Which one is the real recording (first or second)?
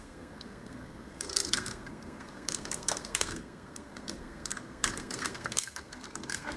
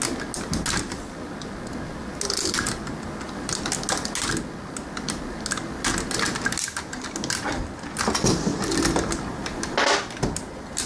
second